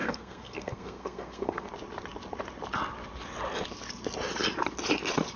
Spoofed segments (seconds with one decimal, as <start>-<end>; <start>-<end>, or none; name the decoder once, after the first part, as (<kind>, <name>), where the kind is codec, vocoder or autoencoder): 0.0-1.7 (codec, SNAC)

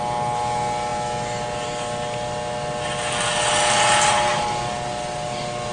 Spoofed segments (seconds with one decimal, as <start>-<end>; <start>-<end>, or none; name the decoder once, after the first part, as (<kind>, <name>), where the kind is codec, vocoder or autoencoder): none

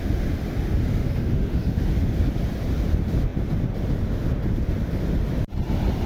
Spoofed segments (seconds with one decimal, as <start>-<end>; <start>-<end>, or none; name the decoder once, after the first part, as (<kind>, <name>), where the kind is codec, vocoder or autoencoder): 0.9-1.9 (autoencoder, DAC-VAE)